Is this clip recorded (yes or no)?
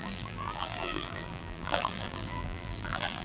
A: no